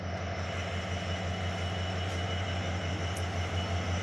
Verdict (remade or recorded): recorded